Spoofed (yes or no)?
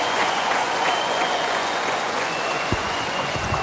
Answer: yes